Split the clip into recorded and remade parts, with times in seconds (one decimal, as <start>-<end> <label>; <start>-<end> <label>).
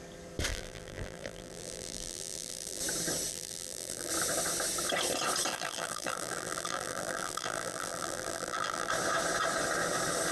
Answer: 0.0-0.5 recorded; 0.5-2.8 remade; 2.8-3.3 recorded; 3.3-4.1 remade; 4.1-5.5 recorded; 5.5-8.9 remade; 8.9-10.3 recorded